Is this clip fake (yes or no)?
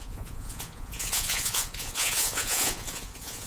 yes